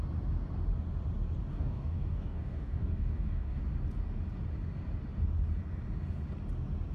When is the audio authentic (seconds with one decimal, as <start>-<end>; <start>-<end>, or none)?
0.0-1.5; 3.6-6.9